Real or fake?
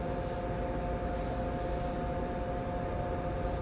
real